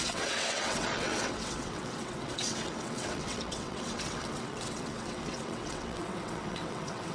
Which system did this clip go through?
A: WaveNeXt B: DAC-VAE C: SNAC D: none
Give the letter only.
A